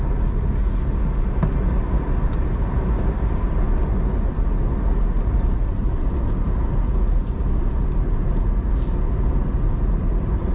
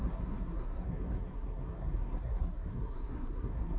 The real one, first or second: first